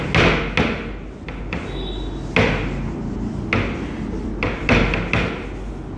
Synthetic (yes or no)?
no